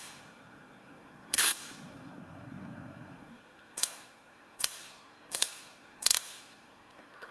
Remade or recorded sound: remade